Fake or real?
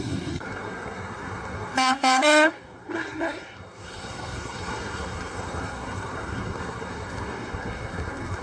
fake